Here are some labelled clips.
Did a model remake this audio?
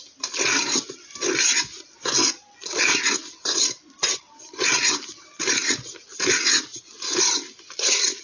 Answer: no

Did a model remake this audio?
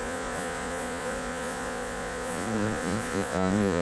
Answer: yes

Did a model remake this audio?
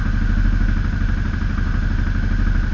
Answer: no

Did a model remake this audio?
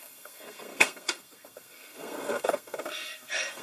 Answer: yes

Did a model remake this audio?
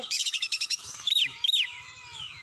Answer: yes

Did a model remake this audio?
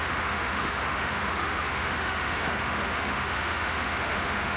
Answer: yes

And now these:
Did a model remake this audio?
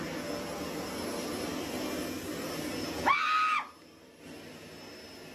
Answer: no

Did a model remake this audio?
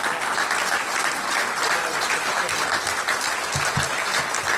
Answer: no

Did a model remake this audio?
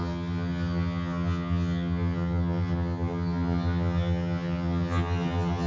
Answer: yes